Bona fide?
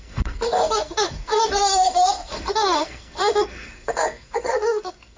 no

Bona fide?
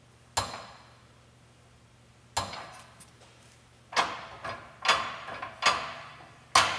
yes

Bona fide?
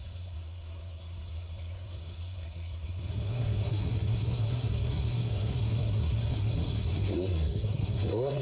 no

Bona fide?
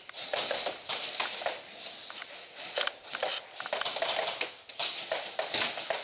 yes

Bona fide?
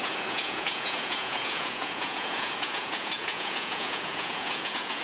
no